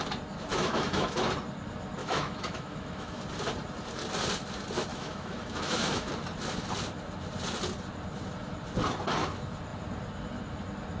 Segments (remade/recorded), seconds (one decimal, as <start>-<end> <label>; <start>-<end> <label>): 0.0-0.5 recorded; 0.5-1.2 remade; 1.2-2.0 recorded; 2.0-3.2 remade; 3.2-4.9 recorded; 4.9-6.1 remade; 6.1-11.0 recorded